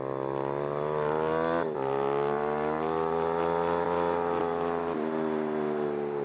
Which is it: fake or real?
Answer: real